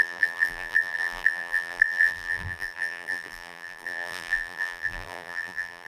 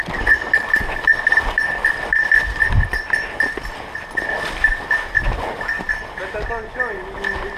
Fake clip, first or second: first